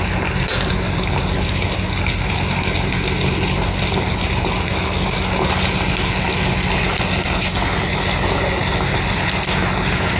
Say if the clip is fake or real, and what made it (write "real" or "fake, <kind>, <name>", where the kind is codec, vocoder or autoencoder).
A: real